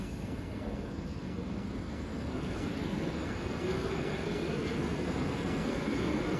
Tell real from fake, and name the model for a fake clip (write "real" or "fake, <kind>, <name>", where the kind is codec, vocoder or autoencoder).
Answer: fake, codec, SNAC